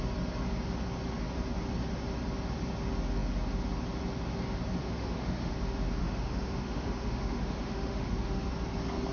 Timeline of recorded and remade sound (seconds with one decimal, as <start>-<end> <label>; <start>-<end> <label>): 0.0-4.8 recorded; 4.8-5.5 remade; 5.5-6.0 recorded; 6.0-8.5 remade; 8.5-9.1 recorded